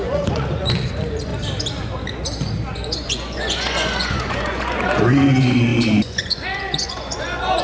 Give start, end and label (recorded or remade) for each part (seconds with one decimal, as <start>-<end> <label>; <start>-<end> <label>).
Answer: 0.0-1.3 remade; 1.3-2.7 recorded; 2.7-7.6 remade